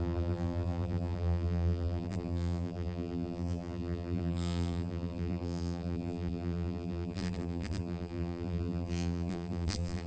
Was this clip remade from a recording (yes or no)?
yes